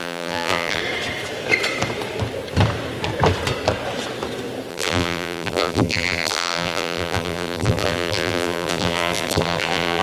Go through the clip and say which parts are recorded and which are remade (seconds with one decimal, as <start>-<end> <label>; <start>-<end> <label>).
0.0-0.8 remade; 0.8-4.7 recorded; 4.7-10.0 remade

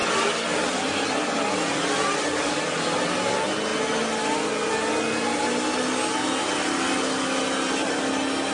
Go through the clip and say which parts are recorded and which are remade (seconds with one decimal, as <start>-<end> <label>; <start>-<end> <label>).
0.0-8.5 recorded

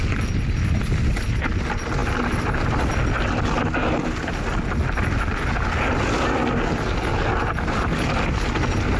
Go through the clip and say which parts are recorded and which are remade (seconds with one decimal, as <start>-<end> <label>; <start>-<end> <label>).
0.0-2.0 recorded; 2.0-2.9 remade; 2.9-9.0 recorded

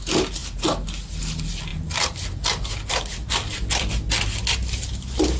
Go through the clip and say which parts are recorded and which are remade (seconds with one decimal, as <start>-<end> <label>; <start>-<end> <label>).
0.0-5.4 recorded

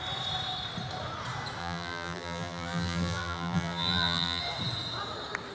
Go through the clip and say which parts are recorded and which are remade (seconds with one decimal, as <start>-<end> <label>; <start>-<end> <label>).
0.0-1.6 recorded; 1.6-4.4 remade; 4.4-5.5 recorded

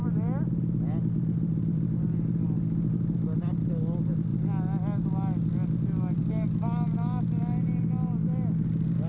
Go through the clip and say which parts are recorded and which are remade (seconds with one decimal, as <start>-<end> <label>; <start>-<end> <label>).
0.0-9.1 recorded

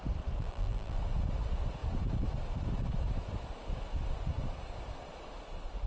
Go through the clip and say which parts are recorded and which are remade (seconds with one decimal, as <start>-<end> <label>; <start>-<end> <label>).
0.0-0.4 recorded; 0.4-1.0 remade; 1.0-5.9 recorded